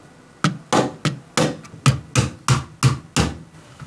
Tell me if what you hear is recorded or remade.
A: recorded